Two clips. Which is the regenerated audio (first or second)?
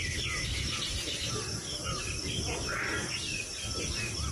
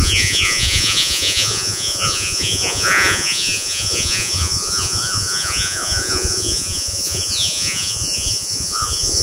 second